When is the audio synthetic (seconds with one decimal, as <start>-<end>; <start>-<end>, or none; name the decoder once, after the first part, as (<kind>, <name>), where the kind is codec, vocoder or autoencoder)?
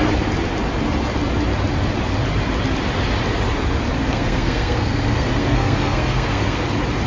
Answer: 4.0-6.6 (codec, SNAC)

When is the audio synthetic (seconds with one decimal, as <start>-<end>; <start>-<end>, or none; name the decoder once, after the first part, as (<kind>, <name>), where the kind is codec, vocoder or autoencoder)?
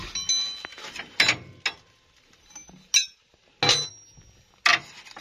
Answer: 4.7-5.2 (vocoder, BigVGAN v2)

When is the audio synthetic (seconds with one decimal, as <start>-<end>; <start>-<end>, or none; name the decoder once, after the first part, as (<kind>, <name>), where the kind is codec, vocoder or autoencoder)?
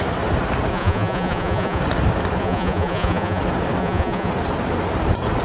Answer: 0.7-1.8 (vocoder, Vocos); 2.4-3.4; 3.8-4.3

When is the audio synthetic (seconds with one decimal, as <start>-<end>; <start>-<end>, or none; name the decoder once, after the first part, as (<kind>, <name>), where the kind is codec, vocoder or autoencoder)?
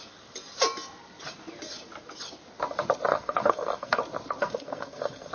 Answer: 3.1-4.0 (codec, SNAC); 4.4-5.3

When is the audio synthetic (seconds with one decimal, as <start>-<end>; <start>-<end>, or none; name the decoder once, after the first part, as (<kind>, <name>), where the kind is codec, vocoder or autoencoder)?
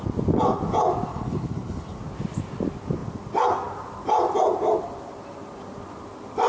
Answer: 1.1-2.0 (codec, HILCodec)